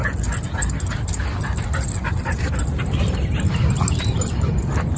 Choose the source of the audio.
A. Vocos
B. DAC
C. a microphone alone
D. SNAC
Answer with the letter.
C